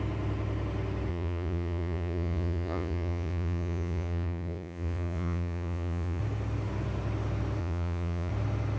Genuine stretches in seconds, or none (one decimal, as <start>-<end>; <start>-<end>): 0.0-1.1; 6.2-7.6; 8.3-8.8